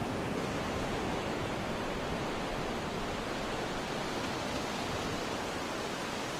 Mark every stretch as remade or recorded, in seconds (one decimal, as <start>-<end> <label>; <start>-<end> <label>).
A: 0.0-3.8 remade; 3.8-6.4 recorded